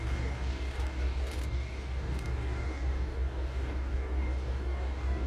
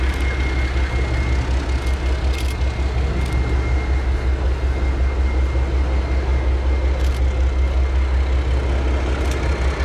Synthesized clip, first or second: first